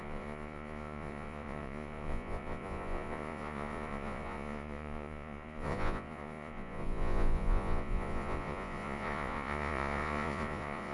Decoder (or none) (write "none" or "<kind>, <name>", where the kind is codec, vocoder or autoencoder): vocoder, Vocos